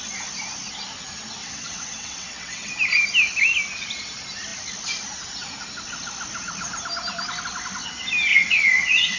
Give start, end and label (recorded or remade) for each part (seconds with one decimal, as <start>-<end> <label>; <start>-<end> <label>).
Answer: 0.0-1.4 recorded; 1.4-2.7 remade; 2.7-8.3 recorded; 8.3-9.2 remade